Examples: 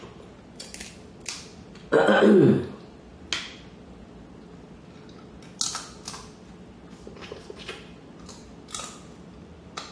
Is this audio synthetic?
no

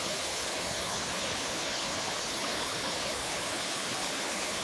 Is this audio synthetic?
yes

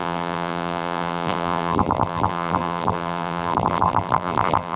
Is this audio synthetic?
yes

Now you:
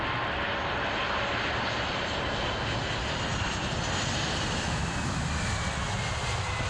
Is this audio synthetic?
no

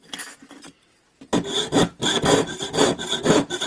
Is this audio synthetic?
no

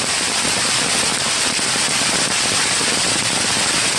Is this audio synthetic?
no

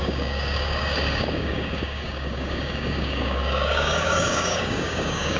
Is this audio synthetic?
yes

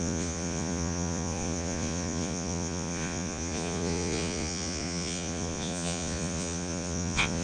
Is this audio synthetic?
yes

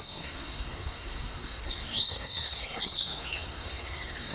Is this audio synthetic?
yes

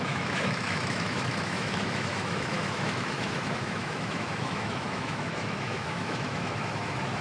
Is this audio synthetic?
yes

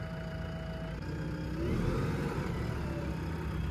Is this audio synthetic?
no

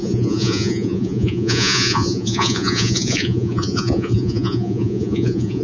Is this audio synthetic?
yes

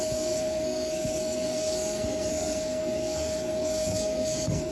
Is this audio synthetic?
yes